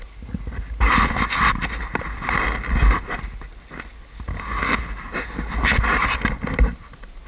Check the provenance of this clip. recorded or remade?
recorded